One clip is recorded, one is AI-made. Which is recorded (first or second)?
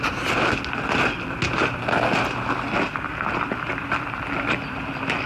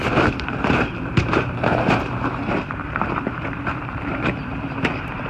first